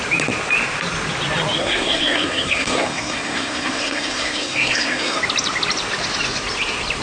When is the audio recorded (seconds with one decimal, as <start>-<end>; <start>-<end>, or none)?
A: 0.0-1.6; 5.2-7.0